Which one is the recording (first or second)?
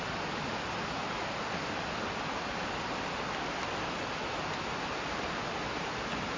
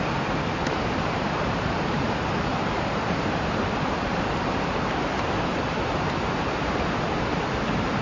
first